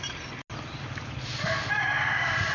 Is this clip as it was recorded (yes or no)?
yes